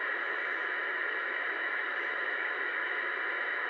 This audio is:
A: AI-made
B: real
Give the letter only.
A